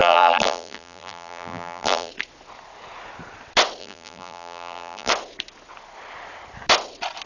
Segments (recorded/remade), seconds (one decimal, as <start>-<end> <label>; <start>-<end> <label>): 0.0-2.1 remade; 2.1-3.8 recorded; 3.8-5.1 remade; 5.1-7.3 recorded